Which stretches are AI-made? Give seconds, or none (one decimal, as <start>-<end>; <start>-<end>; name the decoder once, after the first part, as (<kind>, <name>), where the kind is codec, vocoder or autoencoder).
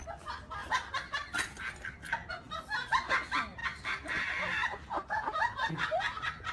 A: 3.6-5.7 (vocoder, BigVGAN v2)